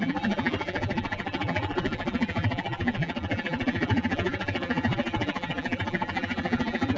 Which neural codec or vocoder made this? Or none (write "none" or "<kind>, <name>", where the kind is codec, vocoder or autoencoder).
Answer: vocoder, BigVGAN v2